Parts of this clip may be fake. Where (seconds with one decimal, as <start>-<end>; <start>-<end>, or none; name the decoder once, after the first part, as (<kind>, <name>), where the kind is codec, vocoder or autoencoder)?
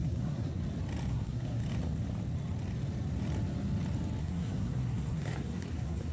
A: 0.0-0.6 (codec, SNAC); 1.1-1.6; 4.2-6.1